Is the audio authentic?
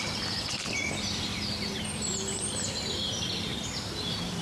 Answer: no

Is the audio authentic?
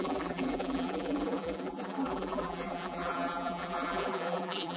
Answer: no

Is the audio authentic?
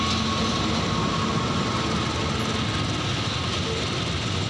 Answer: yes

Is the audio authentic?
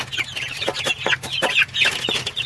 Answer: yes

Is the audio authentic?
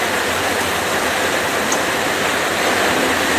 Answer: yes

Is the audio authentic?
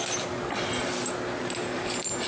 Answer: yes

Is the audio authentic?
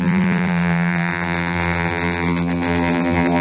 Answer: no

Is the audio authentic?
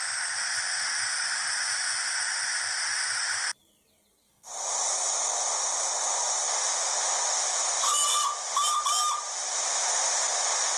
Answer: yes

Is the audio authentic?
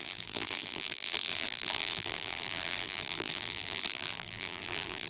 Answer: no